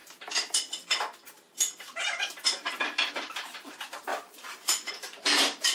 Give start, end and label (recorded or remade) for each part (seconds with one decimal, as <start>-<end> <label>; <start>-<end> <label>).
0.0-3.1 recorded; 3.1-5.7 remade